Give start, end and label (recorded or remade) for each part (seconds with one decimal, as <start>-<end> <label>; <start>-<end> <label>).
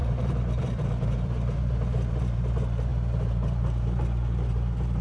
0.0-5.0 remade